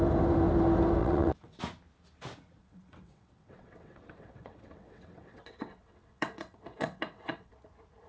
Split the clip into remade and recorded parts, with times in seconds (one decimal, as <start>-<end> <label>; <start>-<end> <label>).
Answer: 0.0-1.0 recorded; 1.0-1.6 remade; 1.6-2.6 recorded; 2.6-7.5 remade; 7.5-8.1 recorded